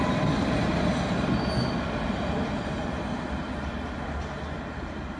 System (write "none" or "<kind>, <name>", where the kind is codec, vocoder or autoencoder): none